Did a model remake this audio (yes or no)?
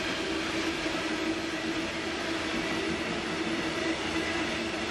no